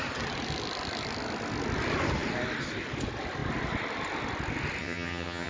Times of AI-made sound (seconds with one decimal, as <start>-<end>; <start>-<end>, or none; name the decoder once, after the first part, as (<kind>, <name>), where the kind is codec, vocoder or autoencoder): 4.8-5.5 (vocoder, HiFi-GAN)